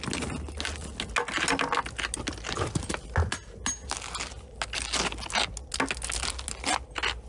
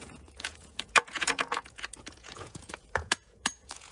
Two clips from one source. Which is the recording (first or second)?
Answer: first